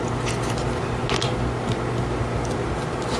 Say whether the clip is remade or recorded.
recorded